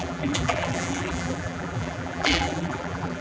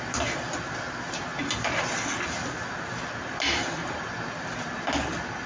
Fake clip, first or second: first